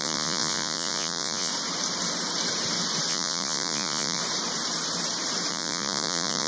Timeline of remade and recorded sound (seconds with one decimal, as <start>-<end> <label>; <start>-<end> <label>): 0.0-1.5 remade; 1.5-3.1 recorded; 3.1-4.2 remade; 4.2-5.5 recorded; 5.5-6.5 remade